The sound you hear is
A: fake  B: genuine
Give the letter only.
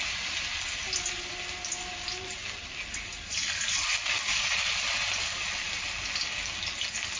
B